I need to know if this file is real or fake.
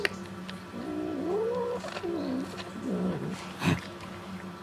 real